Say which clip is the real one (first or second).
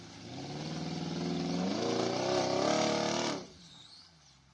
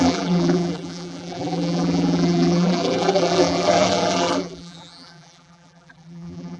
first